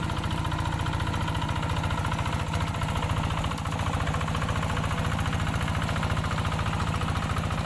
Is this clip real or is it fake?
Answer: real